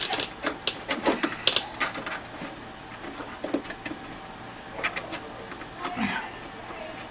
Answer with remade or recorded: recorded